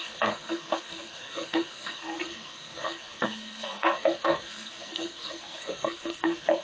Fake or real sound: fake